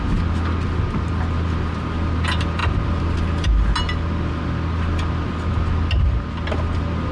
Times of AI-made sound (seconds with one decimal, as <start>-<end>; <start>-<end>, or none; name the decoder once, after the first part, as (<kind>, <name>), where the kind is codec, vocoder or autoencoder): none